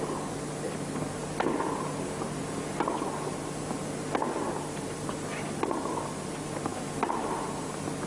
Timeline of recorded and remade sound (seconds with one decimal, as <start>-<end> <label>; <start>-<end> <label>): 0.0-8.1 recorded